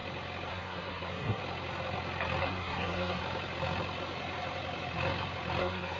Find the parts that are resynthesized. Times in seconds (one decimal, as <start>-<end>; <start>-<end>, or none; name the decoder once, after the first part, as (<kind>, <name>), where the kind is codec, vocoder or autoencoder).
0.5-1.4 (codec, SNAC); 2.4-3.2; 5.6-6.0